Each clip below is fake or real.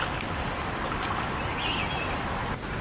real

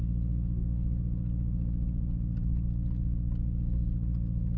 real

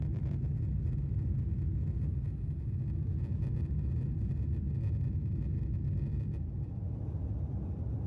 real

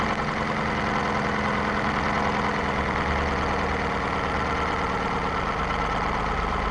real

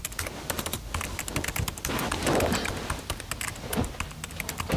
real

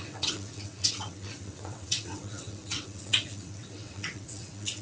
fake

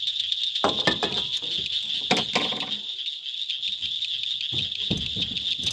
real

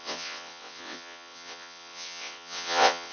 fake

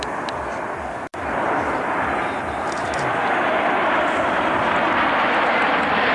real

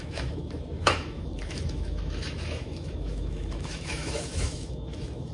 fake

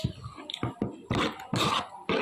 real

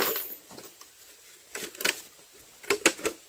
real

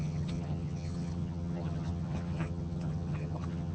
fake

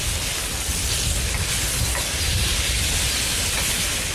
real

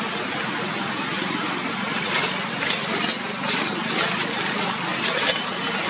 fake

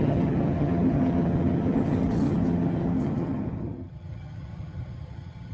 fake